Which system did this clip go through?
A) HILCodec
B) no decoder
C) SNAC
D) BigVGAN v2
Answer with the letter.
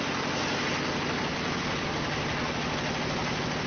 B